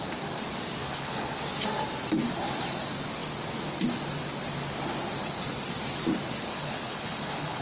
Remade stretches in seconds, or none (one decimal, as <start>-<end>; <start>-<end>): 0.8-1.4; 6.5-7.6

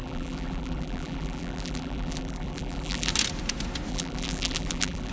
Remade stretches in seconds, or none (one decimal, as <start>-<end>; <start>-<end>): 0.0-3.1; 3.9-5.1

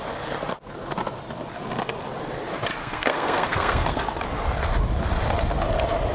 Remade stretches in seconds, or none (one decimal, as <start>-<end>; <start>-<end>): 2.8-4.0

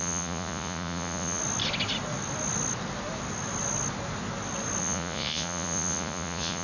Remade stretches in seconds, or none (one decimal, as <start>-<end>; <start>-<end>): 0.0-1.4; 4.8-6.6

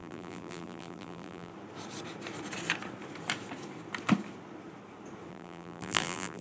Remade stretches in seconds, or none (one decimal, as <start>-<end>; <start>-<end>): 0.0-1.5; 5.3-6.4

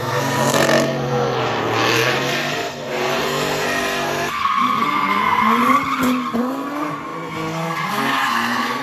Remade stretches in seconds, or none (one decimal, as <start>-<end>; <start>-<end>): 0.0-5.6; 6.4-8.8

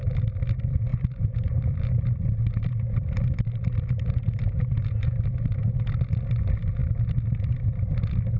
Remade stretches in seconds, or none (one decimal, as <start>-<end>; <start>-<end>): 0.9-5.8